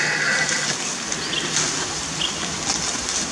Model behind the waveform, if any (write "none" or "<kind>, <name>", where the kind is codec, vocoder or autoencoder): none